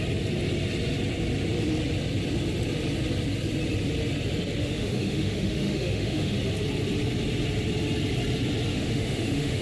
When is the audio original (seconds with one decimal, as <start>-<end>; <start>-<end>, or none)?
0.0-4.6; 6.3-8.7